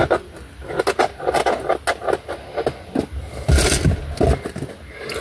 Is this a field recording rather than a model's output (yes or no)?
yes